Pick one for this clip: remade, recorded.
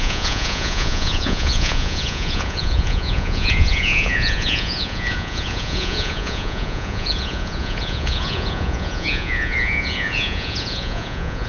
remade